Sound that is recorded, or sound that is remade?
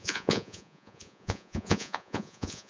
remade